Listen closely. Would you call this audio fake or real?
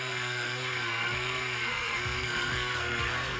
fake